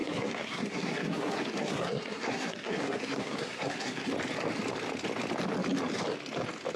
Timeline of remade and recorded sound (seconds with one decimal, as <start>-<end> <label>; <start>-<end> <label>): 0.0-4.1 remade; 4.1-6.8 recorded